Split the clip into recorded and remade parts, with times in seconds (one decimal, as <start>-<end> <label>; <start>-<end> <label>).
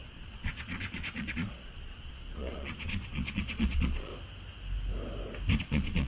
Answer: 0.0-4.1 remade; 4.1-5.6 recorded; 5.6-6.1 remade